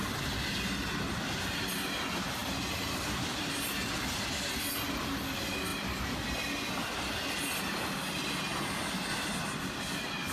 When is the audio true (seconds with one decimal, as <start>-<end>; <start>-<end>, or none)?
0.0-10.3